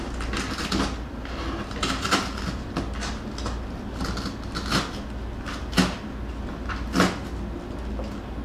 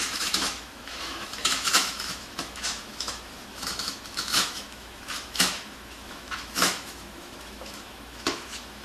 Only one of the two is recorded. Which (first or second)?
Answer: first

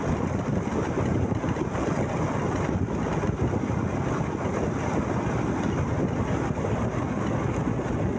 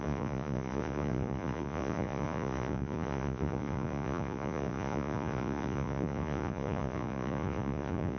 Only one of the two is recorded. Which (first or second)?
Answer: first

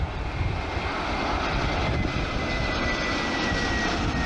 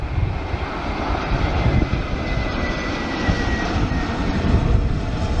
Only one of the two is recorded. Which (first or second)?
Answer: first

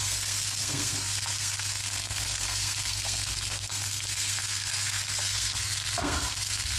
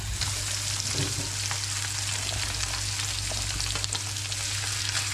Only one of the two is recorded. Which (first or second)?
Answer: second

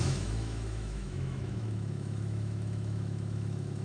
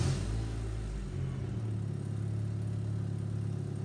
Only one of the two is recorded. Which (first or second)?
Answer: second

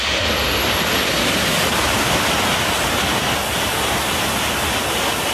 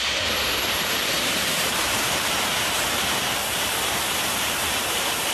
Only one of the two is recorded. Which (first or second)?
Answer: first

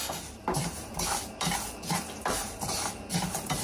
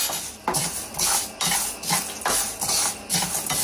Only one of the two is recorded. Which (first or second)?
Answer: second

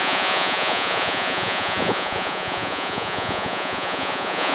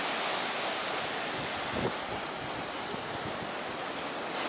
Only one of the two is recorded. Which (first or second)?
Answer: second